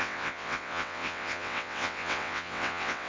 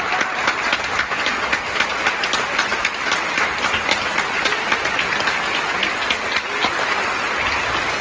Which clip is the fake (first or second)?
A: first